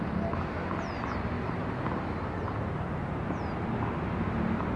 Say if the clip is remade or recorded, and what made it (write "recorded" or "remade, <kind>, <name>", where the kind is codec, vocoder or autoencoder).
recorded